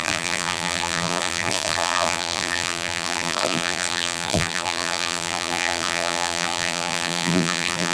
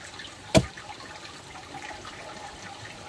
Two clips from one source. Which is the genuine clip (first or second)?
second